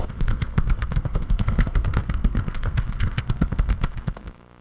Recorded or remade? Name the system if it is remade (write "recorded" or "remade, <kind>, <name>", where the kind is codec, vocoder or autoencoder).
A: remade, codec, SNAC